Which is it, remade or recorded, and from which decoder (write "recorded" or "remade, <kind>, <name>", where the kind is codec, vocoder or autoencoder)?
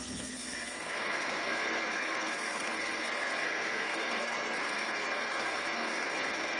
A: remade, codec, SNAC